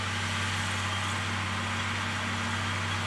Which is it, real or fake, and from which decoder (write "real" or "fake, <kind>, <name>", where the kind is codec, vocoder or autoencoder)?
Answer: real